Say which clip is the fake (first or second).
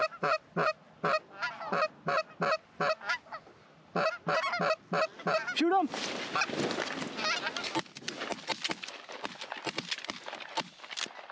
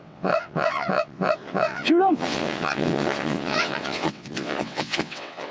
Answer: second